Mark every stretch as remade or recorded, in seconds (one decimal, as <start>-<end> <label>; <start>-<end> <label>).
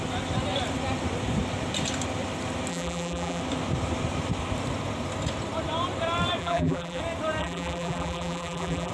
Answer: 0.0-2.7 recorded; 2.7-3.4 remade; 3.4-6.4 recorded; 6.4-7.0 remade; 7.0-7.4 recorded; 7.4-8.9 remade